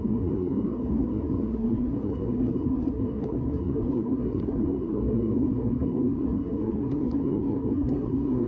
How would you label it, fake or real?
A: fake